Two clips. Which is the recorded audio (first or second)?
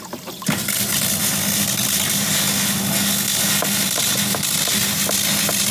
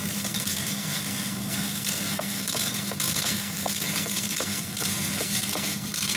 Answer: first